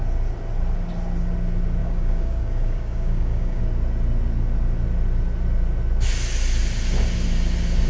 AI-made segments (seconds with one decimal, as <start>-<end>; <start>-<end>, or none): 1.8-3.6